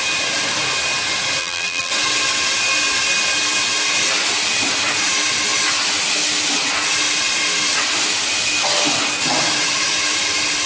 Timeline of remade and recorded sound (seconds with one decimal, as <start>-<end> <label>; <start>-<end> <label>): 0.0-1.4 recorded; 1.4-1.9 remade; 1.9-10.7 recorded